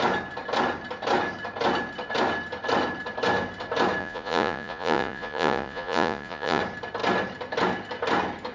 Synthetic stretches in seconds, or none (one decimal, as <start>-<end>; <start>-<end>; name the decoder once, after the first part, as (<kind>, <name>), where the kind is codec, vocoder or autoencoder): 4.0-6.6 (vocoder, Vocos)